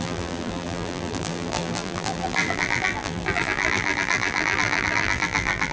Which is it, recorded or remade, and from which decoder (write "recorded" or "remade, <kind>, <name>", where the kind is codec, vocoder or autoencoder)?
remade, vocoder, BigVGAN v2